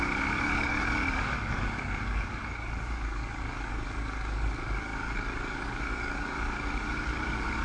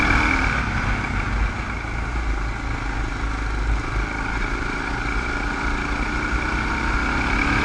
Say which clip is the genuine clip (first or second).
second